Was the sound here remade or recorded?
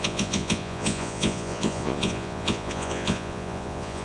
remade